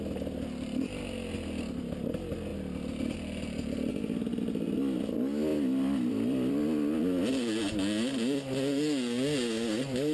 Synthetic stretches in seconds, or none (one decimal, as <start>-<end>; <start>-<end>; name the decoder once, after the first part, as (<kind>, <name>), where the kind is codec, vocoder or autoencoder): 2.5-3.9 (vocoder, BigVGAN v2); 5.5-6.5